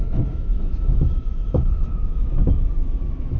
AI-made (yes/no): yes